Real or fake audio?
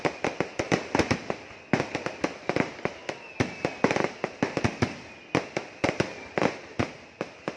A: real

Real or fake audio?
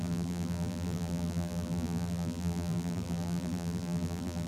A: fake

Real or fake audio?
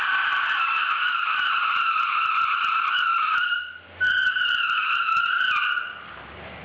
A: real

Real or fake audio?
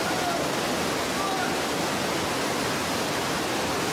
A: real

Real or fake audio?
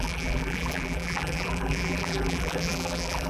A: fake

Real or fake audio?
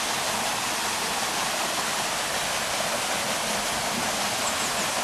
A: real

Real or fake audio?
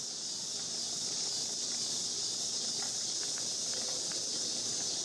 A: real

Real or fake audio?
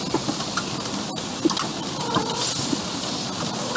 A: real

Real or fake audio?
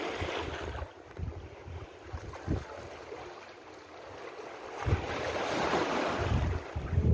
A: real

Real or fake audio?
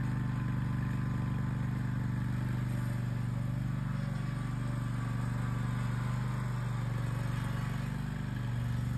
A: real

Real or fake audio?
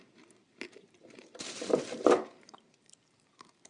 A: fake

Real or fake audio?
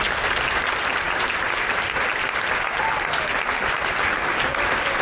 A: fake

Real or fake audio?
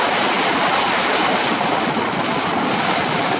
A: real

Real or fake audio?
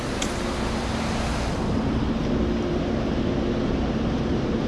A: real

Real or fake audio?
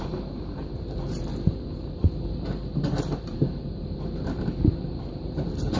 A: fake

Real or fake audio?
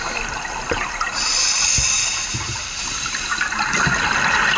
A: real